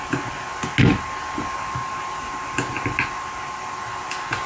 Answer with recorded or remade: recorded